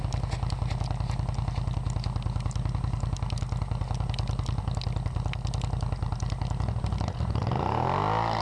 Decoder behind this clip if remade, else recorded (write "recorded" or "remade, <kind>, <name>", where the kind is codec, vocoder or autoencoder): recorded